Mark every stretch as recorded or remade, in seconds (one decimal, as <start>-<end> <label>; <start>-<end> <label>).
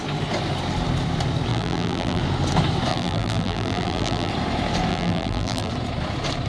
0.0-1.5 recorded; 1.5-2.2 remade; 2.2-2.9 recorded; 2.9-4.3 remade; 4.3-4.9 recorded; 4.9-5.7 remade; 5.7-6.5 recorded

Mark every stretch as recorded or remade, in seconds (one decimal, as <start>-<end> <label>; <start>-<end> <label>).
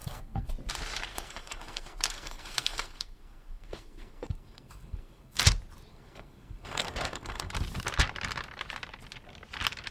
0.0-0.5 remade; 0.5-1.1 recorded; 1.1-5.4 remade; 5.4-5.9 recorded; 5.9-7.5 remade; 7.5-9.9 recorded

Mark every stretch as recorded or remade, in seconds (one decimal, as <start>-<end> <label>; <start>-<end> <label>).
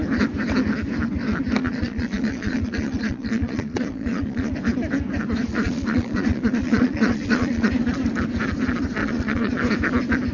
0.0-1.6 recorded; 1.6-4.5 remade; 4.5-5.5 recorded; 5.5-7.7 remade; 7.7-9.0 recorded; 9.0-9.5 remade; 9.5-10.3 recorded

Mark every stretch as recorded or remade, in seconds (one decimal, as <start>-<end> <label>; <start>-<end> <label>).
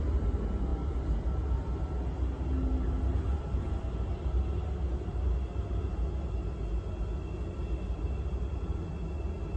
0.0-9.6 recorded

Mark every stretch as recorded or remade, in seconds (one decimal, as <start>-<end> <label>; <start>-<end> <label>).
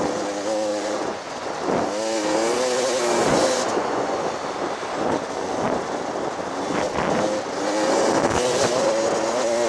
0.0-0.7 recorded; 0.7-1.5 remade; 1.5-3.3 recorded; 3.3-4.2 remade; 4.2-9.7 recorded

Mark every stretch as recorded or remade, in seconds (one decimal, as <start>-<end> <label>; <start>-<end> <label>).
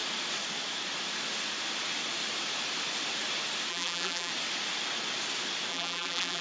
0.0-3.7 recorded; 3.7-4.3 remade; 4.3-5.7 recorded; 5.7-6.4 remade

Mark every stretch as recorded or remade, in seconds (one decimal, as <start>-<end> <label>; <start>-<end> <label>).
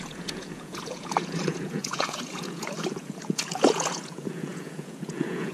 0.0-5.5 remade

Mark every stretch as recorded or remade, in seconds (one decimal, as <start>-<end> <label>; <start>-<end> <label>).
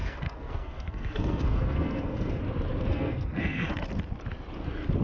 0.0-2.4 remade; 2.4-2.9 recorded; 2.9-3.7 remade; 3.7-5.0 recorded